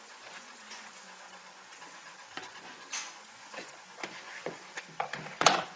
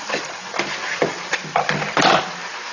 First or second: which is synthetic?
first